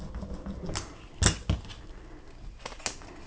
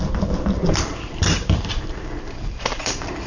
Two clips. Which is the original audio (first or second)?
first